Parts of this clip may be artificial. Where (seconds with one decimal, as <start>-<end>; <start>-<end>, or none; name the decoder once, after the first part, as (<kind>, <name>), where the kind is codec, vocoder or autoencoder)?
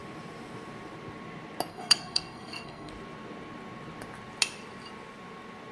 1.7-2.9 (codec, SNAC)